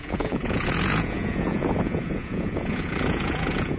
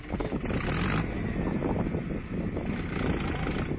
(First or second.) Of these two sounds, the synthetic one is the first